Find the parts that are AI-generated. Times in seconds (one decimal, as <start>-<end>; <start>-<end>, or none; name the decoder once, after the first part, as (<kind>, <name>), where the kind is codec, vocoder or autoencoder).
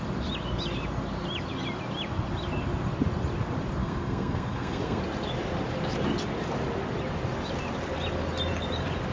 3.8-5.0 (codec, SNAC)